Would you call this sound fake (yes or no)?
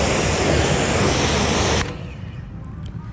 no